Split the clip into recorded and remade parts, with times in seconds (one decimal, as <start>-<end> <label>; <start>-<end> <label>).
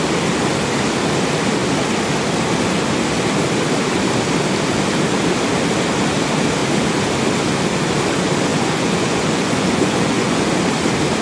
0.0-8.5 recorded; 8.5-10.5 remade; 10.5-11.2 recorded